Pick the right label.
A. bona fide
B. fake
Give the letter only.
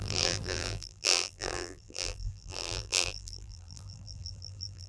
B